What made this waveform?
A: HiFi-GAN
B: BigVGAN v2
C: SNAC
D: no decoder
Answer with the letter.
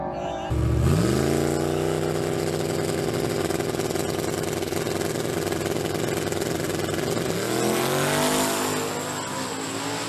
D